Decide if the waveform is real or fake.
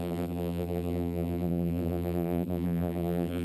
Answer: fake